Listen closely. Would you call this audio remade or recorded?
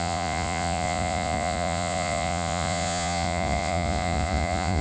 remade